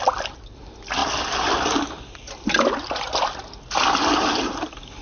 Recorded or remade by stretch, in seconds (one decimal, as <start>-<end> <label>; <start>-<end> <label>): 0.0-5.0 recorded